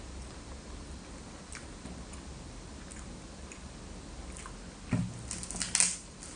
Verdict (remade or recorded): recorded